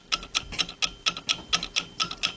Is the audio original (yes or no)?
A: yes